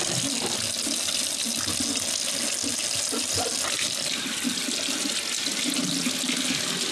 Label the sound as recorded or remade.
recorded